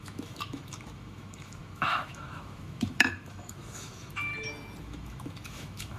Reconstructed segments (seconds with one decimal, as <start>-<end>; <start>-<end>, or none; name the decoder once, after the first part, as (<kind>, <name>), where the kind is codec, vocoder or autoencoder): 0.0-4.3 (autoencoder, DAC-VAE); 4.8-6.0